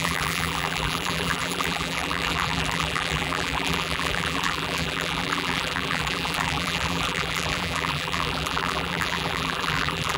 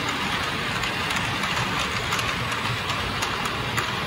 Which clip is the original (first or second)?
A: second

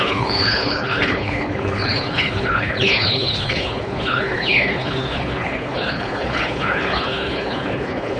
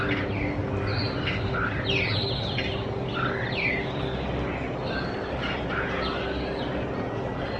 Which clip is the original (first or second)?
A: second